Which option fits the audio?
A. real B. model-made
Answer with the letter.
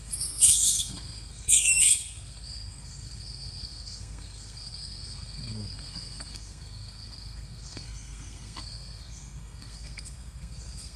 B